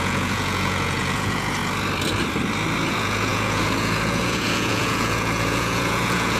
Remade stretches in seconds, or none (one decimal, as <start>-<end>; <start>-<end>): 0.0-1.6; 2.9-6.4